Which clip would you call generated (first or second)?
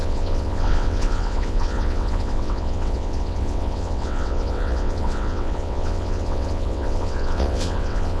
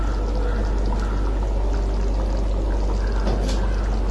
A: first